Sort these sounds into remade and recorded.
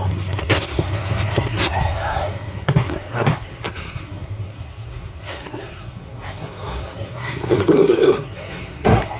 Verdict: remade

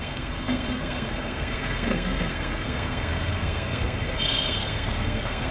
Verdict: remade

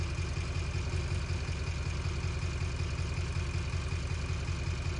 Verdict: recorded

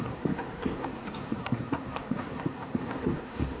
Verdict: remade